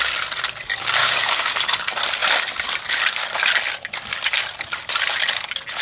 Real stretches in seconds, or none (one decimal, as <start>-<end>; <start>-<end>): 0.0-1.0; 1.5-5.8